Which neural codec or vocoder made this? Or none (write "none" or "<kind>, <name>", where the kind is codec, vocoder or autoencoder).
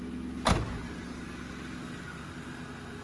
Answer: none